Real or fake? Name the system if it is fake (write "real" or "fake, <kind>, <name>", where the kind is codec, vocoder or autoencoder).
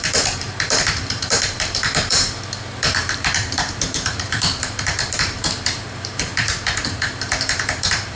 fake, vocoder, BigVGAN v2